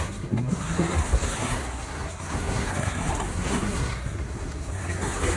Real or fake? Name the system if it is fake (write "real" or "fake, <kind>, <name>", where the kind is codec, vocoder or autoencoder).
fake, codec, SNAC